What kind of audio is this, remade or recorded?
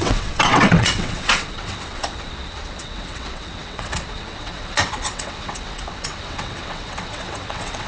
remade